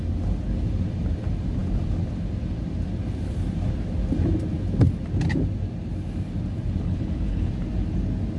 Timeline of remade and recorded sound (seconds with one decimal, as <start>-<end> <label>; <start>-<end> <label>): 0.0-6.8 recorded; 6.8-7.5 remade; 7.5-8.4 recorded

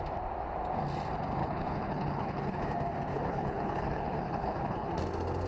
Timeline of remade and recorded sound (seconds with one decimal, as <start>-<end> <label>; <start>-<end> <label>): 0.0-1.4 recorded; 1.4-2.6 remade; 2.6-3.1 recorded; 3.1-4.9 remade; 4.9-5.5 recorded

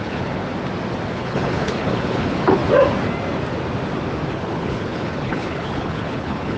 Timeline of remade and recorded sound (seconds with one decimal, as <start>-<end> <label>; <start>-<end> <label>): 0.0-0.4 remade; 0.4-1.1 recorded; 1.1-2.6 remade; 2.6-4.3 recorded; 4.3-6.6 remade

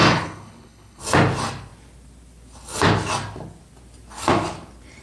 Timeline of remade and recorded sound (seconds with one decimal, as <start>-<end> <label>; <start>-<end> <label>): 0.0-1.0 remade; 1.0-5.0 recorded

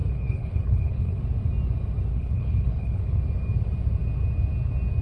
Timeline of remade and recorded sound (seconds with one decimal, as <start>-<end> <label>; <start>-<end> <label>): 0.0-1.2 remade; 1.2-2.1 recorded; 2.1-3.2 remade; 3.2-5.0 recorded

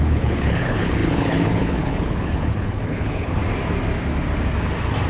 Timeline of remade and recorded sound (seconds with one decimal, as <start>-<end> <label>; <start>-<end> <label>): 0.0-3.4 remade; 3.4-5.1 recorded

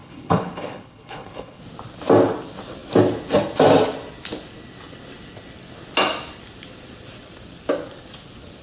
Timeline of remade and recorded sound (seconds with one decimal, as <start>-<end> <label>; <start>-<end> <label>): 0.0-1.6 remade; 1.6-8.6 recorded

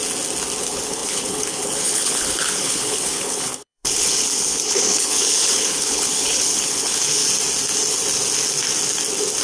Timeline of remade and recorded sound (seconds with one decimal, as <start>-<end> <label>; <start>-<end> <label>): 0.0-0.6 recorded; 0.6-7.2 remade; 7.2-9.4 recorded